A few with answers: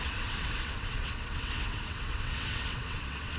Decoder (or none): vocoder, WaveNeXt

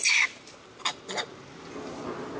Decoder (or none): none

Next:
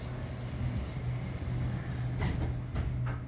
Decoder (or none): none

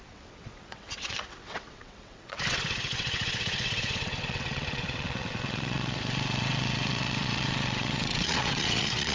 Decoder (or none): vocoder, WaveNeXt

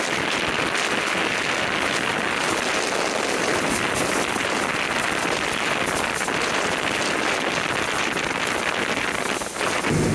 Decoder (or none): none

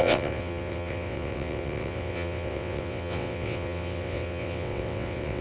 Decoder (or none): vocoder, WaveNeXt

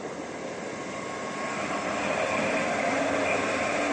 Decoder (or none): none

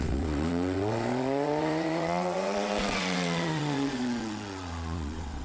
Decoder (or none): vocoder, WaveNeXt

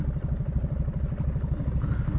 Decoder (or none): none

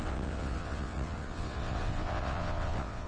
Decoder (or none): vocoder, WaveNeXt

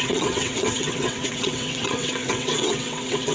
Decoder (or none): vocoder, WaveNeXt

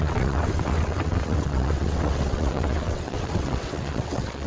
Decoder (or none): vocoder, WaveNeXt